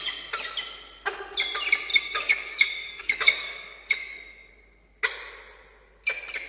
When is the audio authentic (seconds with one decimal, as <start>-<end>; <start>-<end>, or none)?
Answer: 0.0-1.9; 4.5-6.5